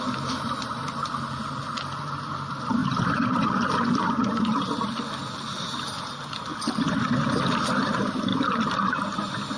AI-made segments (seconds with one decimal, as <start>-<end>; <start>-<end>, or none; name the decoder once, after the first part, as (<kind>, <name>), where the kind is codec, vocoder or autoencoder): 0.0-6.5 (vocoder, BigVGAN v2); 7.6-8.3